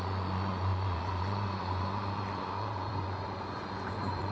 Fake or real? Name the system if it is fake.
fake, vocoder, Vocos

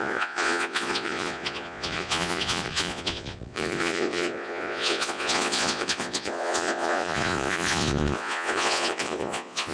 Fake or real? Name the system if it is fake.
fake, vocoder, Vocos